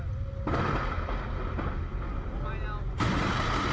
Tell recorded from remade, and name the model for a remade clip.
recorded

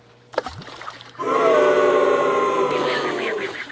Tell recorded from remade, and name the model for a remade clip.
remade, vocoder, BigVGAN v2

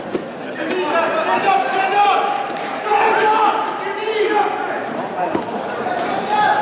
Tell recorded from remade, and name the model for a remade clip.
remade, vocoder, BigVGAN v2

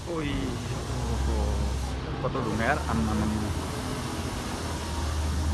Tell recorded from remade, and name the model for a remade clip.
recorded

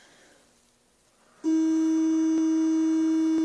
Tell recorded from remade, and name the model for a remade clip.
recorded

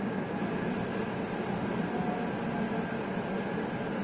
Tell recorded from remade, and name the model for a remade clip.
recorded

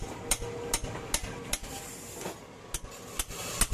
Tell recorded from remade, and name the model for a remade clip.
recorded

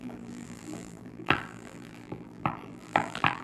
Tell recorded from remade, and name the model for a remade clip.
remade, vocoder, BigVGAN v2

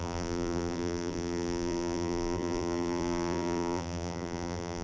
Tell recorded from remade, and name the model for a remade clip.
remade, vocoder, BigVGAN v2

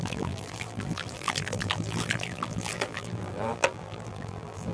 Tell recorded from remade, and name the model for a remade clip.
remade, vocoder, BigVGAN v2